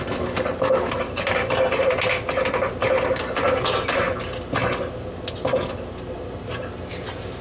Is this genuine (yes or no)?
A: yes